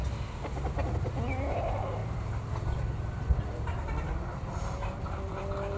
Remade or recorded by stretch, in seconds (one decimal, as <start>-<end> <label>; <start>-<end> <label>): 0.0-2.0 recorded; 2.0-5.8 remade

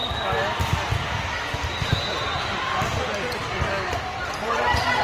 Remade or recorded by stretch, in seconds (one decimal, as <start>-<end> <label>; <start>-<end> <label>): 0.0-5.0 recorded

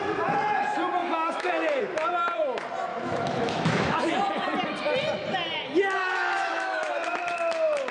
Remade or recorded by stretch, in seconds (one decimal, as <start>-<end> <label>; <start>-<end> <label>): 0.0-1.0 recorded; 1.0-1.8 remade; 1.8-2.9 recorded; 2.9-4.1 remade; 4.1-6.0 recorded; 6.0-6.9 remade; 6.9-7.9 recorded

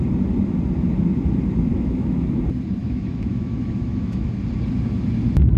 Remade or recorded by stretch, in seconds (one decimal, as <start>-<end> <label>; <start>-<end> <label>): 0.0-1.7 recorded; 1.7-2.4 remade; 2.4-2.8 recorded; 2.8-4.3 remade; 4.3-5.6 recorded

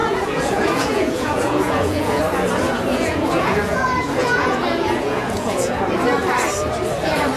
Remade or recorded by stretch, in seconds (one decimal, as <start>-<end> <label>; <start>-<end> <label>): 0.0-2.2 remade; 2.2-2.9 recorded; 2.9-3.8 remade; 3.8-4.2 recorded; 4.2-5.8 remade; 5.8-7.4 recorded

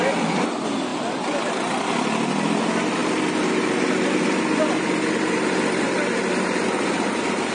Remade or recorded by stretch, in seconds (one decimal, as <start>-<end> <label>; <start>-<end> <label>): 0.0-0.9 recorded; 0.9-1.8 remade; 1.8-3.0 recorded; 3.0-7.5 remade

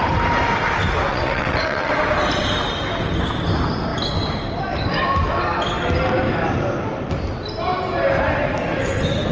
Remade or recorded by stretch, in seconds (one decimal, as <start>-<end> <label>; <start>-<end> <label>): 0.0-1.1 recorded; 1.1-1.9 remade; 1.9-9.3 recorded

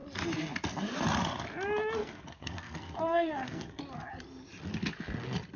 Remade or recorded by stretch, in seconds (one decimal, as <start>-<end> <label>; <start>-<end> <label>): 0.0-2.0 recorded; 2.0-3.8 remade; 3.8-5.6 recorded